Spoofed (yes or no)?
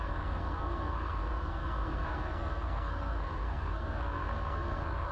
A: yes